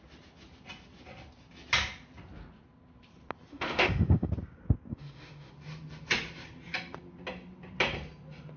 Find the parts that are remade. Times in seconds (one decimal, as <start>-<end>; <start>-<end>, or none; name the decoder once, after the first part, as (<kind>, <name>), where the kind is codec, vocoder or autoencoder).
3.5-4.3 (autoencoder, DAC-VAE); 4.9-5.5